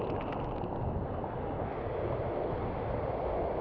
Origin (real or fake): real